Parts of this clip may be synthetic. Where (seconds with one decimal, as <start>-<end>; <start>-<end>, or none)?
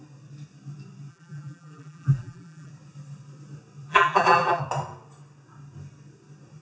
1.1-2.7; 3.9-4.6